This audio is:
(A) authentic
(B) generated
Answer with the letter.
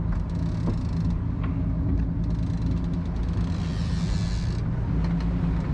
A